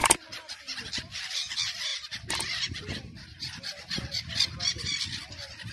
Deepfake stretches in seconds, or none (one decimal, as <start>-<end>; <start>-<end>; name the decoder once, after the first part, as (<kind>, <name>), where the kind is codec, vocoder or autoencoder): none